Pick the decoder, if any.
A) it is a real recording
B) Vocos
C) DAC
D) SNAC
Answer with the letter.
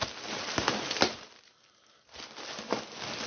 A